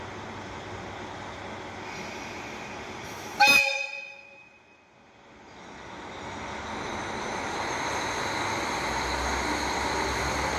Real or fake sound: real